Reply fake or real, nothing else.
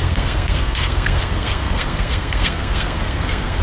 fake